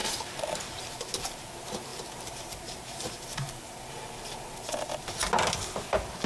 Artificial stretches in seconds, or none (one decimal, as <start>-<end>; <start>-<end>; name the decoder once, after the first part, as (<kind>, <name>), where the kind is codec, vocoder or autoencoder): 0.0-1.5 (vocoder, BigVGAN v2); 1.9-5.2